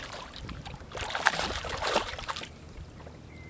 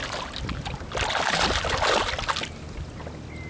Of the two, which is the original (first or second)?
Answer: second